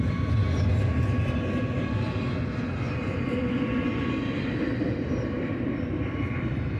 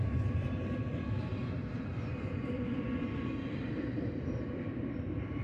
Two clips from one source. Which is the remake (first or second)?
second